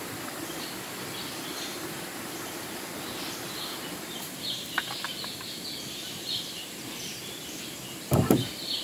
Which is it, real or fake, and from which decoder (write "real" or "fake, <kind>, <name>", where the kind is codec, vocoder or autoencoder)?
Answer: real